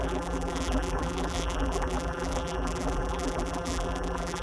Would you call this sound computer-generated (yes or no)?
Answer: yes